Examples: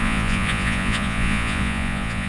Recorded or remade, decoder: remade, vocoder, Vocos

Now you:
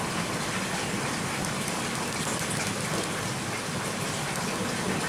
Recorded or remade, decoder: recorded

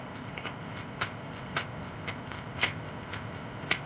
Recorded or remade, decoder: remade, codec, ZipCodec